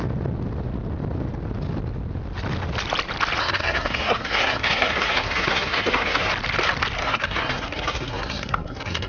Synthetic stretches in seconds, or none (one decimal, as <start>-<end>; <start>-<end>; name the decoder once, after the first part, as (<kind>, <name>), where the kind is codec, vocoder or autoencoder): 3.4-6.3 (codec, SNAC); 7.0-9.1